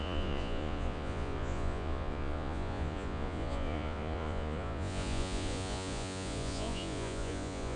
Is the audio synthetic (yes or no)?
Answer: yes